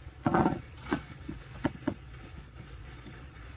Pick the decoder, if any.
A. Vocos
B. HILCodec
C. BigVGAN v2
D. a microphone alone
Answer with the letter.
A